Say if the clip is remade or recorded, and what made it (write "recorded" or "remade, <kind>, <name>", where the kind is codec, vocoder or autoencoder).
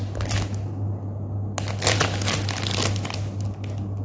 recorded